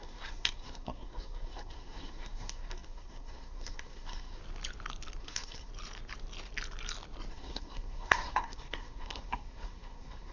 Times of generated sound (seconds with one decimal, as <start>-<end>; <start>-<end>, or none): 0.0-4.4; 5.2-5.7; 7.3-10.3